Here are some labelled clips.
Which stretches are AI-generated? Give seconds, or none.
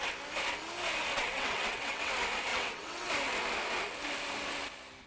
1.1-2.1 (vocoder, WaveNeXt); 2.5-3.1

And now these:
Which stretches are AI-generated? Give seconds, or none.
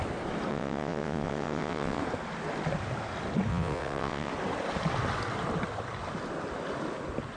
0.5-2.0 (vocoder, WaveNeXt); 3.5-4.3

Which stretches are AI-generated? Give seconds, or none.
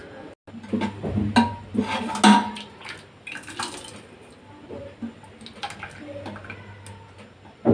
none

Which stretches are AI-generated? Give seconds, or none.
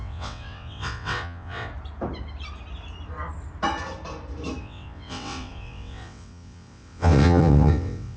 0.0-1.7 (vocoder, WaveNeXt); 4.6-8.2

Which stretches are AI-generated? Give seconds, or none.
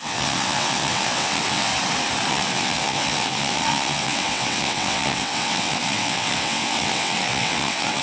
0.0-1.7 (vocoder, WaveNeXt); 2.3-8.0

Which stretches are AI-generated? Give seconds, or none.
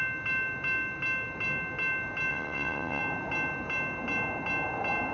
2.3-3.0 (vocoder, WaveNeXt)